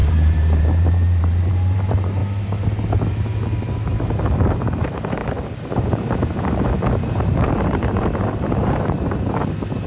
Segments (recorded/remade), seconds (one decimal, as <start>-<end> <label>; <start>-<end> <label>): 0.0-2.2 remade; 2.2-3.9 recorded; 3.9-9.9 remade